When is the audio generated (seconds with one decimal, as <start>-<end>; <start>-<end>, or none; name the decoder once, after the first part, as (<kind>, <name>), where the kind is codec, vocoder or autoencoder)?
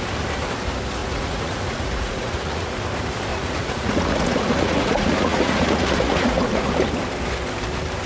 1.0-2.8 (vocoder, Vocos); 3.3-6.7